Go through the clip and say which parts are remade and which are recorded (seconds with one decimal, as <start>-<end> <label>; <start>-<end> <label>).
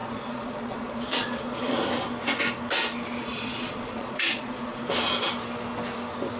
0.0-1.7 remade; 1.7-3.2 recorded; 3.2-4.8 remade; 4.8-6.4 recorded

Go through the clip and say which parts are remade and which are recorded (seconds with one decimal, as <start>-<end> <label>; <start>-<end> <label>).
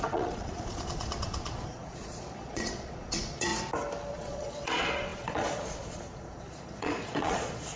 0.0-3.5 remade; 3.5-4.1 recorded; 4.1-7.8 remade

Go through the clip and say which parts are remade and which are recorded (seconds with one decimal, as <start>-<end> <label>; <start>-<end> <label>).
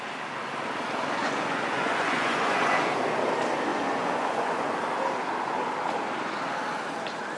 0.0-1.2 recorded; 1.2-2.9 remade; 2.9-3.7 recorded; 3.7-4.7 remade; 4.7-7.4 recorded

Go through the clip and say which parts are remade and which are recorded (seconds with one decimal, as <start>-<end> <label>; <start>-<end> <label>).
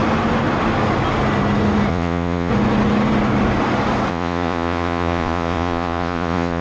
0.0-1.9 recorded; 1.9-2.5 remade; 2.5-4.1 recorded; 4.1-6.6 remade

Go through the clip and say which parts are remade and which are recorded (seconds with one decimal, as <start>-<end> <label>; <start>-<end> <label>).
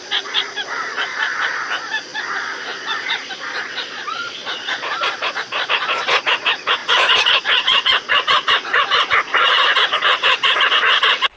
0.0-11.4 remade